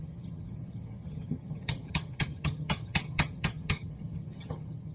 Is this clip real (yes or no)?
no